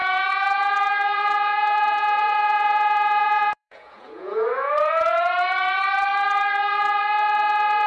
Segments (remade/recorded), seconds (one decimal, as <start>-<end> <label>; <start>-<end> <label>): 0.0-4.7 remade; 4.7-7.9 recorded